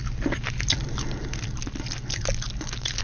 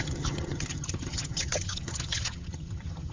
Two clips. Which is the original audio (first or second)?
first